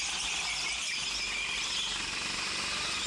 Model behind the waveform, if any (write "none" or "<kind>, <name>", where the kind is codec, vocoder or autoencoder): none